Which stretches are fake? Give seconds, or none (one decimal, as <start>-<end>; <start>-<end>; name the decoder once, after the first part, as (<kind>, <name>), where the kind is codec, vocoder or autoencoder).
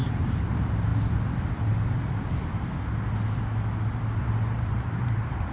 0.0-0.9 (vocoder, BigVGAN v2); 4.2-5.5